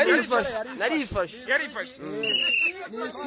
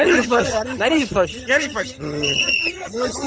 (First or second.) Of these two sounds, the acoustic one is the first